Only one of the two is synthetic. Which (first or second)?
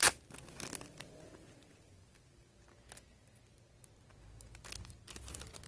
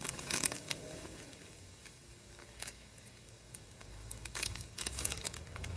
second